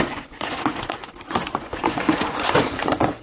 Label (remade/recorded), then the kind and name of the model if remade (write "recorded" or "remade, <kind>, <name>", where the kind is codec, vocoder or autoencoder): remade, vocoder, Vocos